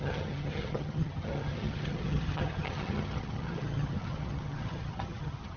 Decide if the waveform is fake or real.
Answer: fake